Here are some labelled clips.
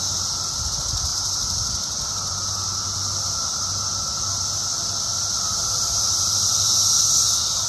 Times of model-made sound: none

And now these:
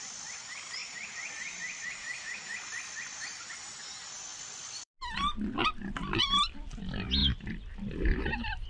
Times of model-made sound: 4.3-4.9 (vocoder, BigVGAN v2); 7.2-8.2